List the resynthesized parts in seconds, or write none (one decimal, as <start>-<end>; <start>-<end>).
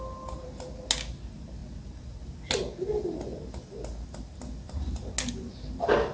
none